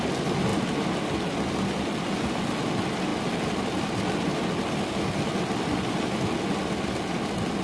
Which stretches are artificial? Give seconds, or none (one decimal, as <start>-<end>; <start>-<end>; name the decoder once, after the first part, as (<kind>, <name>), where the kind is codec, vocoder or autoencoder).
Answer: none